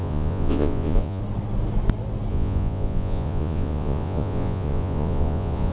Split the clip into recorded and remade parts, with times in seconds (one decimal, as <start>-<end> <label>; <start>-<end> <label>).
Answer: 0.0-1.2 remade; 1.2-2.3 recorded; 2.3-5.7 remade